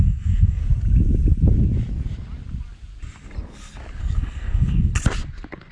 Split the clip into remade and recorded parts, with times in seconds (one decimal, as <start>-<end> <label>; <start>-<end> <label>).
0.0-0.6 remade; 0.6-4.0 recorded; 4.0-4.9 remade; 4.9-5.7 recorded